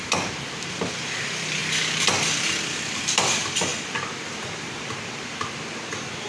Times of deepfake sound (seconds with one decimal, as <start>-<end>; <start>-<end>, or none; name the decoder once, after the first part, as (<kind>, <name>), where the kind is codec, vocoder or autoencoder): 0.0-1.6 (vocoder, BigVGAN v2); 2.6-6.3